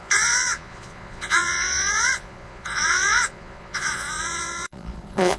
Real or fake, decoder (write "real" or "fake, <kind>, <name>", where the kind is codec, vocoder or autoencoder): fake, vocoder, Vocos